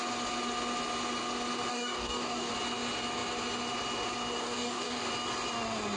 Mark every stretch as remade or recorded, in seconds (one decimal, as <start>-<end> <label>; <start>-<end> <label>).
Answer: 0.0-1.7 recorded; 1.7-2.5 remade; 2.5-4.4 recorded; 4.4-5.1 remade; 5.1-6.0 recorded